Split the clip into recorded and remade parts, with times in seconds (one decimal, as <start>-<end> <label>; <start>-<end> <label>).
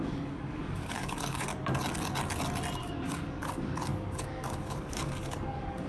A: 0.0-1.5 remade; 1.5-2.8 recorded; 2.8-5.9 remade